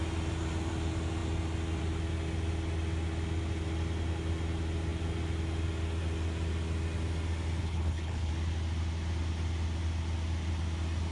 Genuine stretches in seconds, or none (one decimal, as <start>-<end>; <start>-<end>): 0.0-7.6; 8.3-11.1

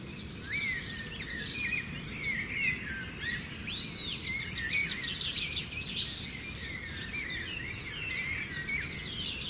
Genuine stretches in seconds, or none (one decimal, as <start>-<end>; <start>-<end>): 0.0-9.5

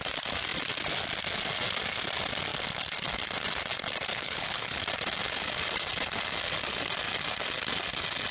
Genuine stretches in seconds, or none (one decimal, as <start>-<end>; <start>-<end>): 0.0-4.1; 4.8-8.3

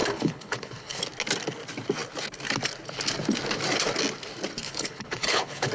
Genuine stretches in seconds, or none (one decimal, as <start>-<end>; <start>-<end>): 1.0-4.6